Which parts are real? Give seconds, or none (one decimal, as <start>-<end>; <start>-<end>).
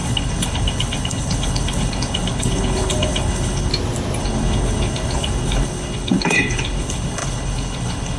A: 3.7-4.2